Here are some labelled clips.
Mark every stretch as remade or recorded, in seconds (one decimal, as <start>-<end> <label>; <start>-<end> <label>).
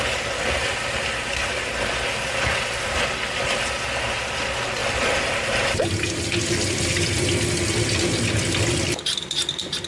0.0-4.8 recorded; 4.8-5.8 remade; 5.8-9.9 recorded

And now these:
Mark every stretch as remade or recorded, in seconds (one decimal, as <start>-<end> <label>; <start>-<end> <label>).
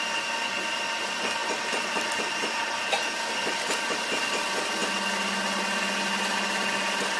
0.0-7.2 recorded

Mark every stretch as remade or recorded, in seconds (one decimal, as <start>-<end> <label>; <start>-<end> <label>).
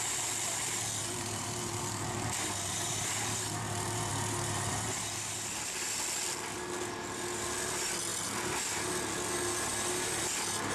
0.0-1.0 recorded; 1.0-5.3 remade; 5.3-10.7 recorded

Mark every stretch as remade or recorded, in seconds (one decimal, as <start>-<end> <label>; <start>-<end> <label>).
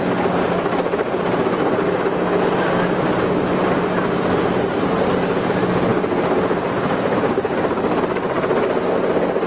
0.0-9.5 recorded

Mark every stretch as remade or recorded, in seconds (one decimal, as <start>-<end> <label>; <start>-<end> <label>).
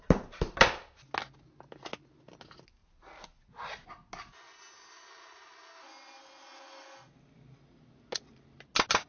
0.0-9.1 recorded